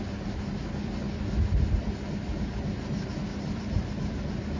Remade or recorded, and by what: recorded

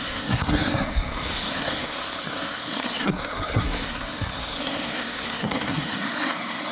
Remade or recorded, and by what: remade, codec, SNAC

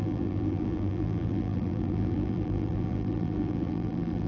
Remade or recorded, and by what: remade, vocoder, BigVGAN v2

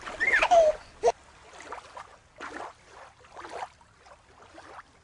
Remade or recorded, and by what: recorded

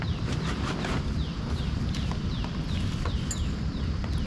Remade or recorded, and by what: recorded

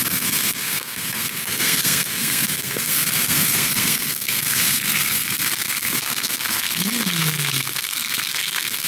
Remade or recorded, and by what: remade, codec, SNAC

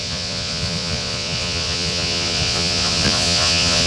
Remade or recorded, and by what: remade, vocoder, Vocos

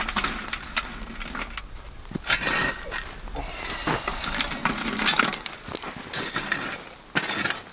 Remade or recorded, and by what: recorded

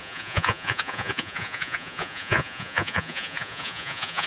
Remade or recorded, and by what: remade, vocoder, Vocos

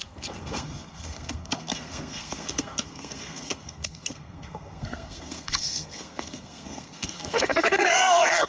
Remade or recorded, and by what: remade, codec, SNAC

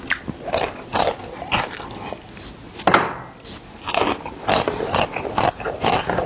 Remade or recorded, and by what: recorded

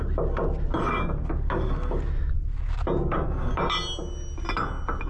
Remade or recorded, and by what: recorded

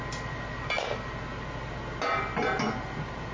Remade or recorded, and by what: recorded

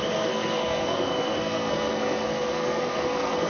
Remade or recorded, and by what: remade, codec, SNAC